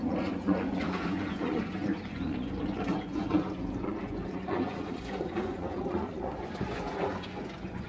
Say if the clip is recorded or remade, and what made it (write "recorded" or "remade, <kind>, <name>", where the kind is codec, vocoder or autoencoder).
remade, vocoder, Vocos